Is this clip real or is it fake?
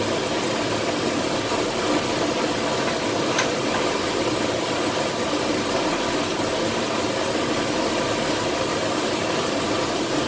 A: real